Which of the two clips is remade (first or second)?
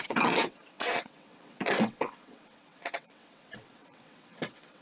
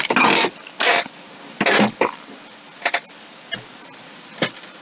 first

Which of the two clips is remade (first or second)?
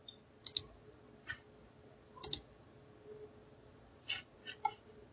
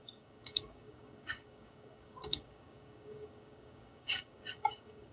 second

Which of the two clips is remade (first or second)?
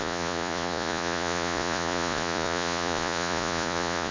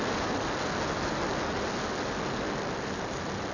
first